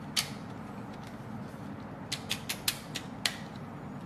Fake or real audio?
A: real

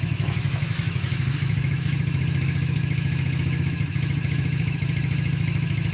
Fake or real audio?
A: fake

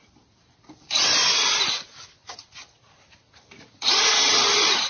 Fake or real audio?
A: real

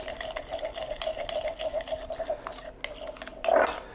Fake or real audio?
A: real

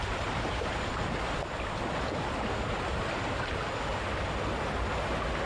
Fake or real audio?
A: real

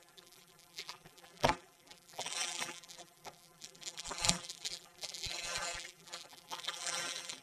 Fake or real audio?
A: fake